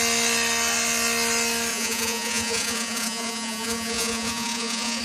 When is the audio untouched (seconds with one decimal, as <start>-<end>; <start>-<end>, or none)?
0.0-1.7